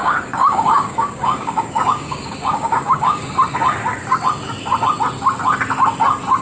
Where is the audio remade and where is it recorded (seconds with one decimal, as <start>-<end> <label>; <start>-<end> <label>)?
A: 0.0-3.3 remade; 3.3-6.4 recorded